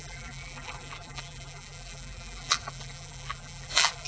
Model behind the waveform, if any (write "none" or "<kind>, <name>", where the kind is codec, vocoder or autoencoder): vocoder, BigVGAN v2